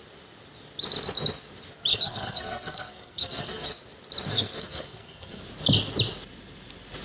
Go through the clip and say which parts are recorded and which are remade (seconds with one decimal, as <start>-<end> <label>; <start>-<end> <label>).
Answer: 0.0-1.9 recorded; 1.9-3.8 remade; 3.8-4.3 recorded; 4.3-5.4 remade; 5.4-7.0 recorded